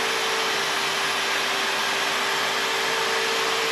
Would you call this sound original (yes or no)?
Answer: yes